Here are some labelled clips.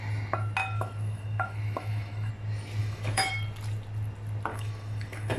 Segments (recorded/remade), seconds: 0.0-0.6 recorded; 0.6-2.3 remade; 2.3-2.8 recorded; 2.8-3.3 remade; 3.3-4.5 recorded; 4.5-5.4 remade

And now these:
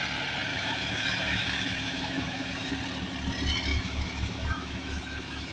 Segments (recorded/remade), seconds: 0.0-0.5 recorded; 0.5-2.7 remade; 2.7-3.7 recorded; 3.7-5.5 remade

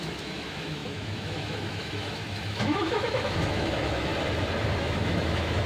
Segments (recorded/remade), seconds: 0.0-4.1 remade; 4.1-4.8 recorded; 4.8-5.7 remade

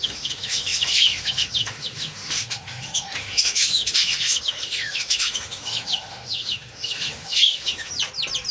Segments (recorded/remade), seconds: 0.0-7.9 remade; 7.9-8.5 recorded